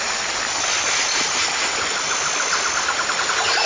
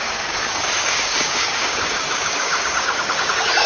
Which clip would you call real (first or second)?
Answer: first